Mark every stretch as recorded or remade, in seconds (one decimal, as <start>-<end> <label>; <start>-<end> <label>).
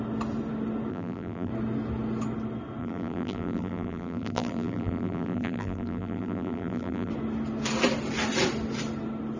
0.0-0.9 recorded; 0.9-1.5 remade; 1.5-2.8 recorded; 2.8-7.1 remade; 7.1-9.4 recorded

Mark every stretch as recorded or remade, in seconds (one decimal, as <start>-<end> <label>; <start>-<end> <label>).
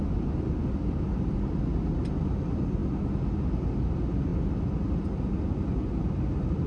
0.0-6.7 recorded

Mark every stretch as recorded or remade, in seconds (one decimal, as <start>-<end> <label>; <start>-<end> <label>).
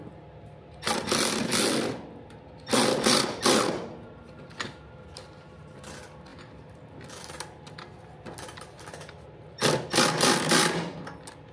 0.0-11.5 recorded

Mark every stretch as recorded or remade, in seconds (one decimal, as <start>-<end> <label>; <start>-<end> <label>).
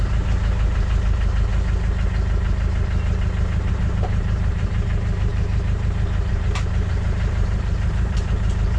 0.0-1.5 remade; 1.5-3.7 recorded; 3.7-8.8 remade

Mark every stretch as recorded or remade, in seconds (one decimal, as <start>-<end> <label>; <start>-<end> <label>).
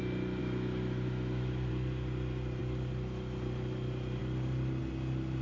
0.0-0.4 recorded; 0.4-1.7 remade; 1.7-5.4 recorded